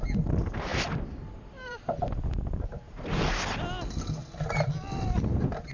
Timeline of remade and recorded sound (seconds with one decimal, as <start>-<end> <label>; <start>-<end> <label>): 0.0-0.7 recorded; 0.7-3.2 remade; 3.2-5.7 recorded